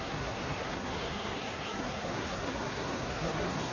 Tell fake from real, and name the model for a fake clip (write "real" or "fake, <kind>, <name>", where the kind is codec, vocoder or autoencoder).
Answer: fake, codec, SNAC